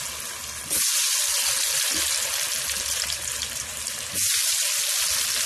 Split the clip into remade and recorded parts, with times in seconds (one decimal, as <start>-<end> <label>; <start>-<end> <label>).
0.0-5.5 recorded